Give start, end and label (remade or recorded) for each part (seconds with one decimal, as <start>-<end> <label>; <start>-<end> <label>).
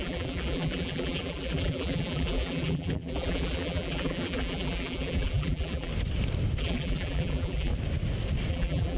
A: 0.0-5.9 remade; 5.9-6.6 recorded; 6.6-7.7 remade; 7.7-8.5 recorded; 8.5-9.0 remade